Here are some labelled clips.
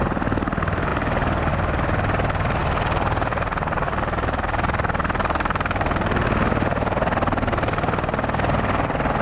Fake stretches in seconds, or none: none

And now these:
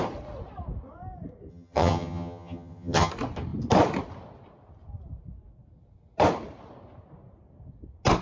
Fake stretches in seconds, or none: 1.5-3.1 (vocoder, HiFi-GAN)

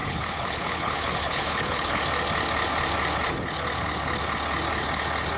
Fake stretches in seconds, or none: 0.0-2.0 (codec, HILCodec)

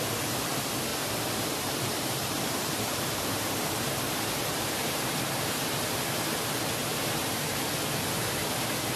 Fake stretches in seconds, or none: 0.9-5.5 (vocoder, BigVGAN v2); 6.8-7.7

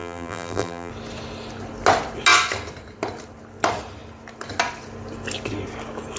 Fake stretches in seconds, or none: 0.0-0.9 (vocoder, BigVGAN v2)

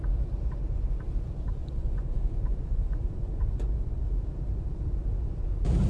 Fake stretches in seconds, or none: 1.6-4.0 (vocoder, Vocos)

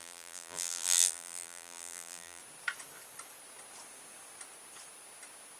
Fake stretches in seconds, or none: 0.0-2.4 (vocoder, BigVGAN v2)

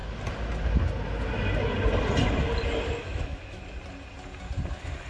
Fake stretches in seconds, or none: 3.0-3.6 (autoencoder, DAC-VAE)